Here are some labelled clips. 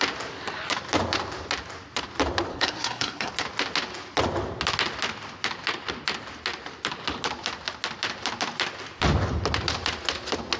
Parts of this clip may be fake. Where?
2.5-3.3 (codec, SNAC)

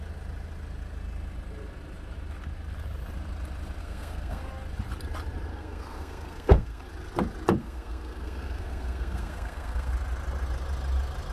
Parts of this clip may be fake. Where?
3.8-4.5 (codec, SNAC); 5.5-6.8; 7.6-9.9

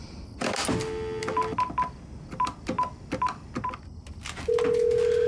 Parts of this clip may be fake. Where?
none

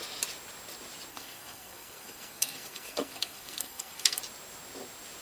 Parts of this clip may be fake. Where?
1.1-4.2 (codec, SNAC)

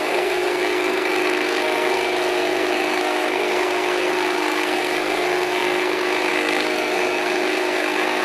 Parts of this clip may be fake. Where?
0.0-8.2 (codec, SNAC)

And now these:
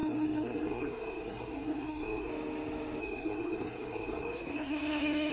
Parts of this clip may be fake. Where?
0.0-2.3 (codec, SNAC); 3.0-5.3

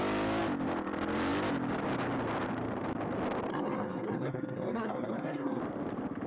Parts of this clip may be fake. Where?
3.5-5.6 (codec, SNAC)

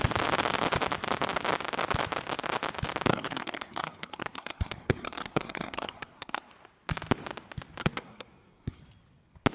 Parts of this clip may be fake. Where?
3.1-6.5 (codec, SNAC); 7.8-8.8